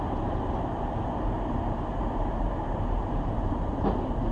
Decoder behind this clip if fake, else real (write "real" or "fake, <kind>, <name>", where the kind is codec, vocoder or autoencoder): fake, vocoder, BigVGAN v2